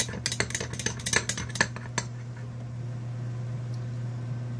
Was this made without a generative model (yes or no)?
yes